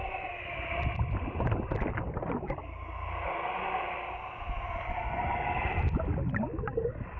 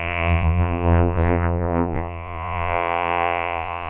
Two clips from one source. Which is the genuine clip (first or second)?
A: first